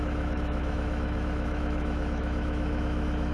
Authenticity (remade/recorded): remade